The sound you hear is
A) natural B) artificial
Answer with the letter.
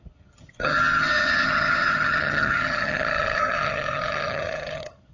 B